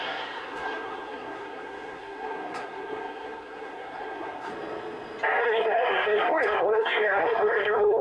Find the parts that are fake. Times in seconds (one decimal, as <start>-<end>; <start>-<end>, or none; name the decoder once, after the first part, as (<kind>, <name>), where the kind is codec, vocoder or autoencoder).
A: 0.0-4.5 (codec, SNAC); 5.4-8.0